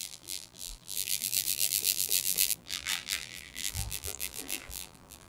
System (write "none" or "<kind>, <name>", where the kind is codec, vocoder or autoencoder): vocoder, BigVGAN v2